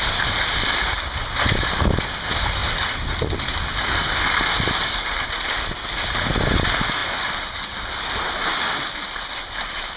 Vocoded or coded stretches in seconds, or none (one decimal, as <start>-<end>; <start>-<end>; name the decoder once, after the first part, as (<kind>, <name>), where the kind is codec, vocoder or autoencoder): none